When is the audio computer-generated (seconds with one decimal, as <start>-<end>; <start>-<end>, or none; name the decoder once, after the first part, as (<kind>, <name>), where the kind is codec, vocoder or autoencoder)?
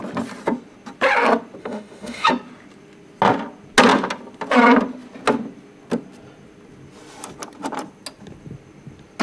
1.6-2.3 (autoencoder, DAC-VAE)